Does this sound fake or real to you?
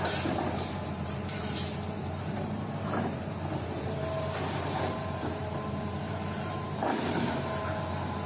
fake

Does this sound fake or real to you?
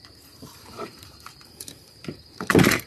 fake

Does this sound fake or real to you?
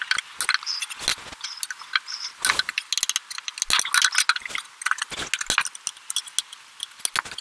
real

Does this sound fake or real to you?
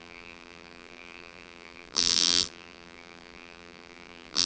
fake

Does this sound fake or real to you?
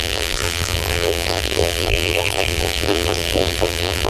fake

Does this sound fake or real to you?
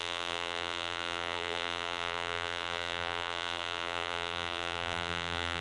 fake